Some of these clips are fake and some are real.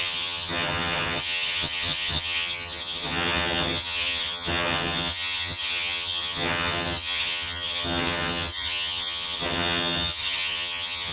fake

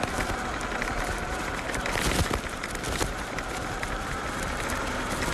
real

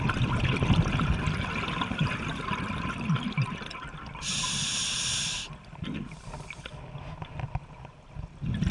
real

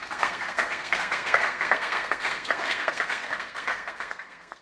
fake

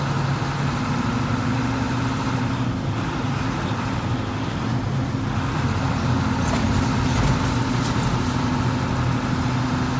real